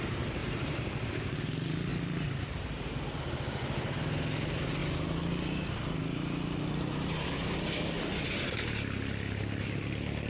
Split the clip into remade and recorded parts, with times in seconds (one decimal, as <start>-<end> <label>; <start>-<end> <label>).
0.0-0.4 recorded; 0.4-1.1 remade; 1.1-1.9 recorded; 1.9-3.0 remade; 3.0-10.3 recorded